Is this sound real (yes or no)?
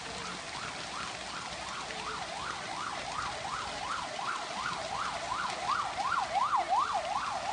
yes